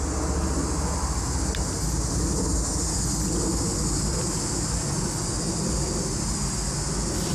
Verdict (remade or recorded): recorded